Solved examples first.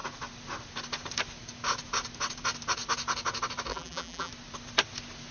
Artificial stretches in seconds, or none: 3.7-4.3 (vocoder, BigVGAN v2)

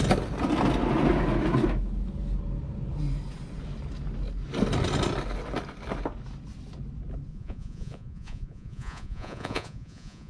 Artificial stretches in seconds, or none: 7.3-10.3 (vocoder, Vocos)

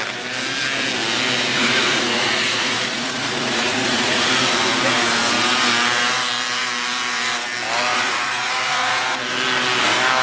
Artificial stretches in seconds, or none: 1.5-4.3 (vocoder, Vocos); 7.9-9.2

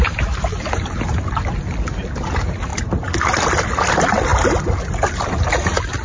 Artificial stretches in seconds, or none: none

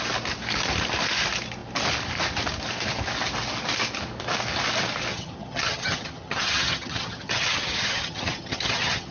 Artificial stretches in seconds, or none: 5.1-9.1 (vocoder, HiFi-GAN)

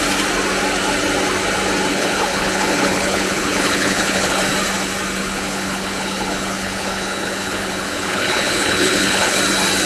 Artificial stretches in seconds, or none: 1.9-4.4 (codec, HILCodec); 5.2-9.4